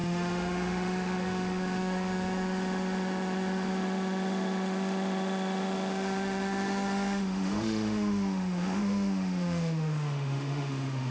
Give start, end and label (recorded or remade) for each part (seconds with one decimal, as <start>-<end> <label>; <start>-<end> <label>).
0.0-11.1 remade